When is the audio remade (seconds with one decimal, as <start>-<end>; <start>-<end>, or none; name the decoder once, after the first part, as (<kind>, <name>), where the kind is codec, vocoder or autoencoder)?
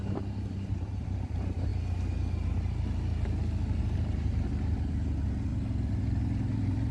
0.0-1.7 (vocoder, BigVGAN v2); 3.8-5.5; 6.0-6.9